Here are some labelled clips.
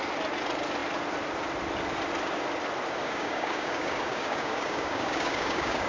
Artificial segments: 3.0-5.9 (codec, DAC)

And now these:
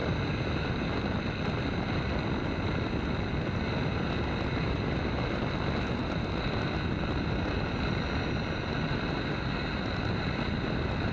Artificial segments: none

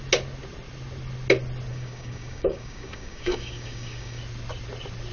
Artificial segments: 1.7-4.2 (codec, DAC)

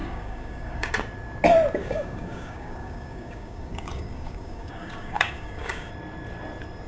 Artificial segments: 0.0-0.9 (codec, DAC); 1.8-5.9

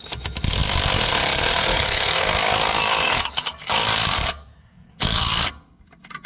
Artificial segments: 1.7-5.5 (codec, DAC)

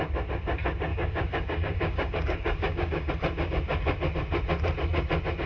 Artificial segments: 0.9-3.1 (codec, DAC)

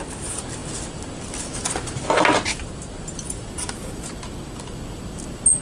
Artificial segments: none

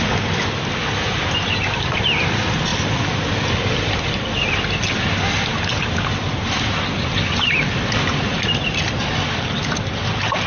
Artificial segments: none